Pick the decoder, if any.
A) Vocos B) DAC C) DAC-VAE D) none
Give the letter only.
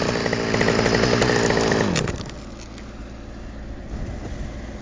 D